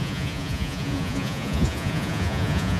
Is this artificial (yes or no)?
yes